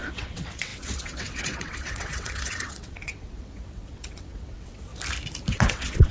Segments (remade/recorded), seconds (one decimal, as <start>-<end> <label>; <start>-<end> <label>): 0.0-4.9 remade; 4.9-5.5 recorded; 5.5-6.1 remade

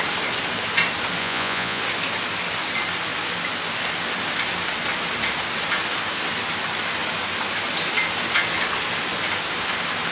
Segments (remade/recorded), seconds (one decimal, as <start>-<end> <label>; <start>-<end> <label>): 0.0-1.2 recorded; 1.2-1.8 remade; 1.8-10.1 recorded